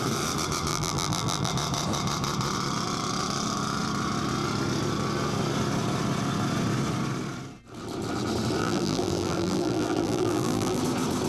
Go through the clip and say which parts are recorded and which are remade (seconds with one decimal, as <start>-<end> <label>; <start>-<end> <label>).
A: 0.0-0.7 recorded; 0.7-1.5 remade; 1.5-8.6 recorded; 8.6-10.8 remade; 10.8-11.3 recorded